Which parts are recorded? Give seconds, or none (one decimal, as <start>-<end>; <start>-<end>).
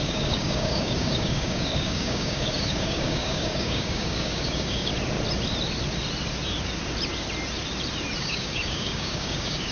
4.9-8.2